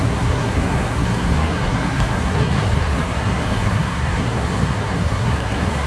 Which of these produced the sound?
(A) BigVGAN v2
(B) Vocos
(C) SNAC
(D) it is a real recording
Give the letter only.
C